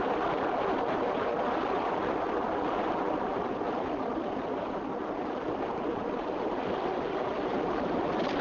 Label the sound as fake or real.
real